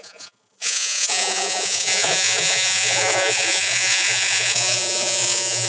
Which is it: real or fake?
fake